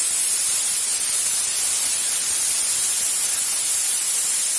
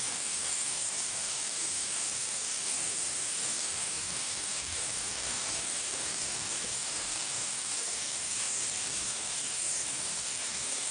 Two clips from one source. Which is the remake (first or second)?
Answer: second